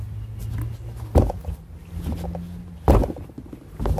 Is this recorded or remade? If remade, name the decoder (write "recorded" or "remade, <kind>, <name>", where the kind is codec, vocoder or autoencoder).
recorded